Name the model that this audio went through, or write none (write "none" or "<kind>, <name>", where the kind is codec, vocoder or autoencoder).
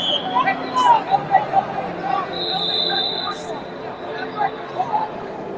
none